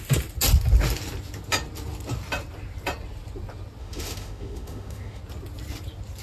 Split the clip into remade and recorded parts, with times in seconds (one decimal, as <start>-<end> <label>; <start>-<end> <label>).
0.0-3.8 recorded; 3.8-5.2 remade; 5.2-6.2 recorded